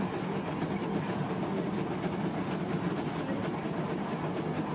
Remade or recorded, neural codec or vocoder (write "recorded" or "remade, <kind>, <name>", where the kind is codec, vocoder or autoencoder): recorded